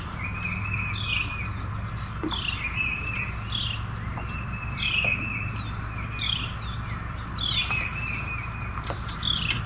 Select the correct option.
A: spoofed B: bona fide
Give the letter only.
B